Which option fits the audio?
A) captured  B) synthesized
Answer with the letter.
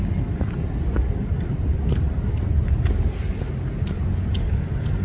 A